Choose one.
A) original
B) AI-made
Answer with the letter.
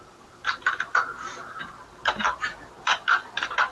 B